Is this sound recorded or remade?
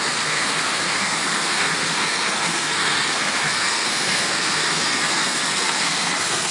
remade